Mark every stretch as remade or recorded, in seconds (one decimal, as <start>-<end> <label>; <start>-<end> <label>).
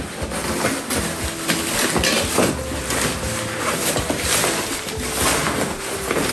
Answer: 0.0-6.3 recorded